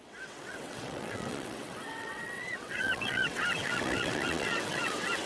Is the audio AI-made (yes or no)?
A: yes